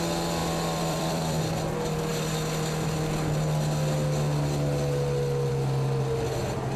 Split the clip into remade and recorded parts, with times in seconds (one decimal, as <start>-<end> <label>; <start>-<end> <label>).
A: 0.0-0.4 recorded; 0.4-1.4 remade; 1.4-6.8 recorded